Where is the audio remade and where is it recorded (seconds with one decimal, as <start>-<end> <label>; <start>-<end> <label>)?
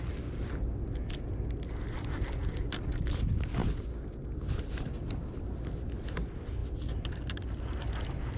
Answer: 0.0-8.4 recorded